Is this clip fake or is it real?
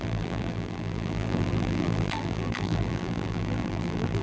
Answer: fake